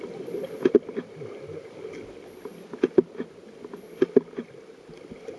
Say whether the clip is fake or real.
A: real